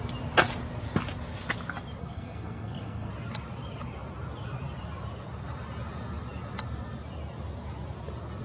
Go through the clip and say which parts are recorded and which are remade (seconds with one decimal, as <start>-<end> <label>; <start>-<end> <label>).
0.0-2.0 recorded; 2.0-3.1 remade; 3.1-8.4 recorded